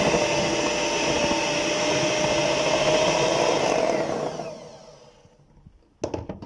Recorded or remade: recorded